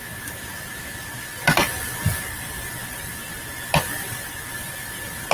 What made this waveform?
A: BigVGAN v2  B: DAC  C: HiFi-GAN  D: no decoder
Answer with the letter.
D